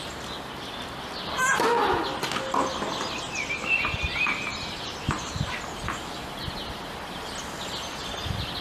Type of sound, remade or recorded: recorded